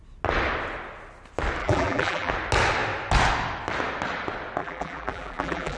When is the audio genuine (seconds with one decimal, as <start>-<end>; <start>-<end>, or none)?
0.0-1.6; 2.3-4.6